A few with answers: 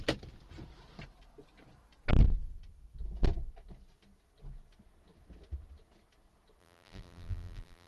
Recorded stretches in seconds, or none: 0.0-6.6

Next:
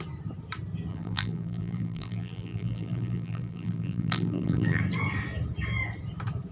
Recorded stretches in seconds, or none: 0.0-0.9; 4.8-6.5